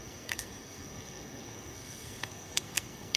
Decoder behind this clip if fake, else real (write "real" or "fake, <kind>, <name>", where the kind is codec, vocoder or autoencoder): fake, codec, SNAC